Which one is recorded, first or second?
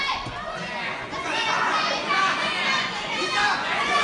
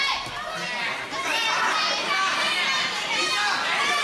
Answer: second